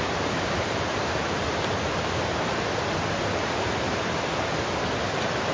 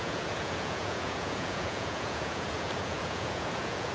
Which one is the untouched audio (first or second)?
first